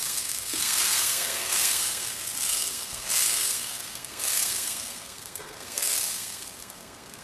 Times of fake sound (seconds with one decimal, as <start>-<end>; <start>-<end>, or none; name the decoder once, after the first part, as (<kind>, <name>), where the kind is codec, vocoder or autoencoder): 0.0-7.2 (codec, SNAC)